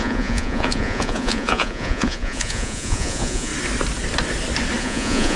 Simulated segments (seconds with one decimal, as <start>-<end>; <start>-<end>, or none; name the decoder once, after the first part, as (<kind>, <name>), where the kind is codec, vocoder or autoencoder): 0.0-3.5 (vocoder, Vocos); 4.8-5.4